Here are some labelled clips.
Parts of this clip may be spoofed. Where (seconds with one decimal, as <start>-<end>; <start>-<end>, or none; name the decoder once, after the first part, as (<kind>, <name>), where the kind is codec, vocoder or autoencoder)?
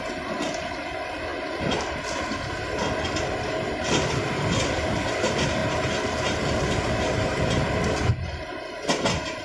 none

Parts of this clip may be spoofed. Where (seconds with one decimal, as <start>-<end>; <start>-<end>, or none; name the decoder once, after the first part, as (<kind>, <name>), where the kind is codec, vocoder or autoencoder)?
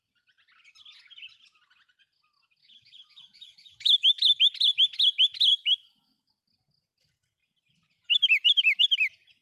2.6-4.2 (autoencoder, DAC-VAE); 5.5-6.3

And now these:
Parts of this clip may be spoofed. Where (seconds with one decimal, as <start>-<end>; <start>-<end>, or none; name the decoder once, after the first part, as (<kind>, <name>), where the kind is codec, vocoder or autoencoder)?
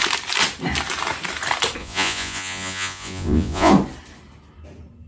1.8-3.7 (vocoder, Vocos)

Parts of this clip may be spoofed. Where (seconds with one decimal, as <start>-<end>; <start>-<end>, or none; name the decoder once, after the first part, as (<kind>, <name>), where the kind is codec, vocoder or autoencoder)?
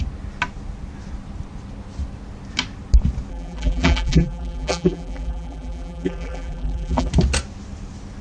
3.3-7.1 (vocoder, BigVGAN v2)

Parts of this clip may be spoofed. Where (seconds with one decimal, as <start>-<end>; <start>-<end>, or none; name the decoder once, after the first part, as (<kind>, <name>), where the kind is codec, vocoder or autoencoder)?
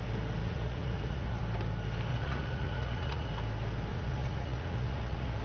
0.4-1.4 (vocoder, Vocos); 2.1-3.3; 3.9-5.4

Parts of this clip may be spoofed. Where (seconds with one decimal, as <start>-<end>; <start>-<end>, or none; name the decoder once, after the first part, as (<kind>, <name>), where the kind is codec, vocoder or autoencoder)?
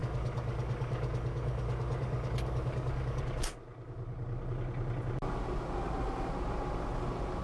0.0-3.2 (codec, DAC)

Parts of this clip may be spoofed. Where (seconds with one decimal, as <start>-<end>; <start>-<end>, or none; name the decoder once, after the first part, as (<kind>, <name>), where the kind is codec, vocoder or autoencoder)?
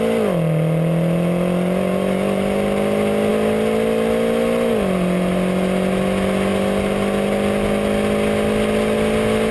none